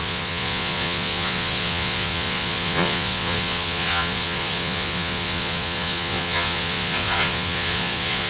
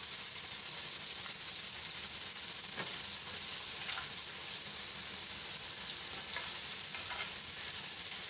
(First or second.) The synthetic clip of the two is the first